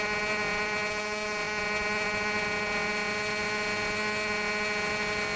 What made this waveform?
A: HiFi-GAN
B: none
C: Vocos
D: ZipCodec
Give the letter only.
B